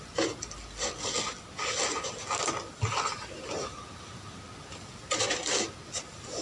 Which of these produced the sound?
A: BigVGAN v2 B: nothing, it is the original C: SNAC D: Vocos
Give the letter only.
B